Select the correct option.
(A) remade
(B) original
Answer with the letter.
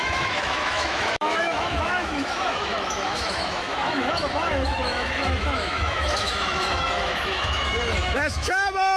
A